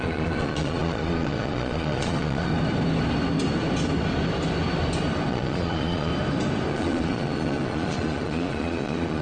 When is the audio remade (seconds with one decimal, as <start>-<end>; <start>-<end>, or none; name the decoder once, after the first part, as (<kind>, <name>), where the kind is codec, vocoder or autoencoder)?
0.0-2.5 (vocoder, Vocos); 5.3-6.1; 6.7-9.2